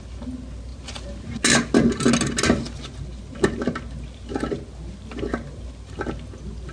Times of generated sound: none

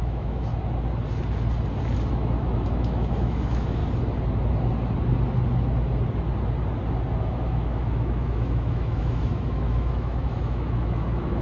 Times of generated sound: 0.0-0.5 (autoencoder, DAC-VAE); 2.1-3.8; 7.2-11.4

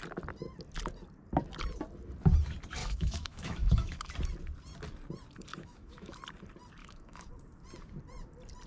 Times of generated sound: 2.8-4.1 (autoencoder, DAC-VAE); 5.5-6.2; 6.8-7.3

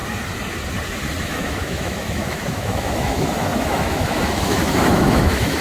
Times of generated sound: 1.3-5.6 (autoencoder, DAC-VAE)

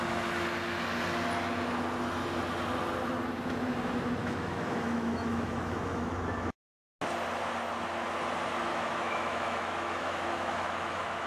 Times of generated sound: 4.2-6.0 (autoencoder, DAC-VAE); 8.7-11.3

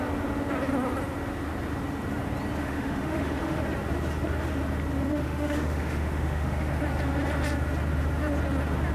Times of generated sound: 2.6-3.6 (autoencoder, DAC-VAE); 5.1-6.8

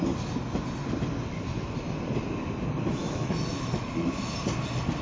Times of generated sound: 3.0-4.3 (autoencoder, DAC-VAE)

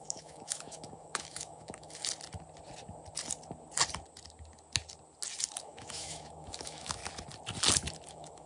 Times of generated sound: 0.0-2.0 (autoencoder, DAC-VAE); 5.6-7.0; 8.1-8.5